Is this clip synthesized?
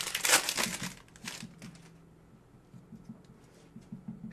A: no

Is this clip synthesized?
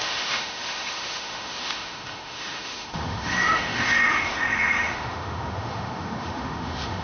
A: yes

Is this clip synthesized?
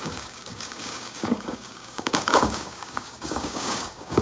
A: yes